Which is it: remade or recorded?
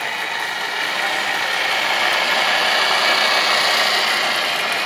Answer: recorded